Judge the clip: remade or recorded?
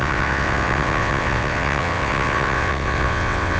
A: remade